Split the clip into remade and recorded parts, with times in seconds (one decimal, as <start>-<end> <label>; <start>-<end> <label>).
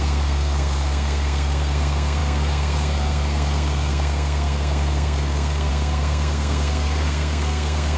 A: 0.0-8.0 remade